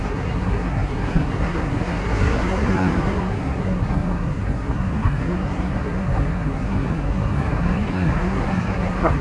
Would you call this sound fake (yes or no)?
yes